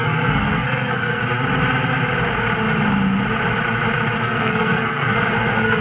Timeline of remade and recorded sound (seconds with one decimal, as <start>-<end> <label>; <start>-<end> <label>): 0.0-1.2 remade; 1.2-4.2 recorded; 4.2-5.8 remade